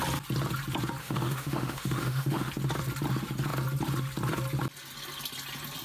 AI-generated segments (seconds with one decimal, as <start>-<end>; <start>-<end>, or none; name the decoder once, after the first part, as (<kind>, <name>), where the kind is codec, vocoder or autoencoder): 1.0-2.5 (autoencoder, DAC-VAE)

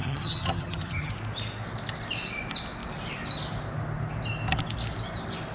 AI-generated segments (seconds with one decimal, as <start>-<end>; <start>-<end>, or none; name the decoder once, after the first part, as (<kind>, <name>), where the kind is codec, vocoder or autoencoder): 0.0-1.1 (vocoder, HiFi-GAN)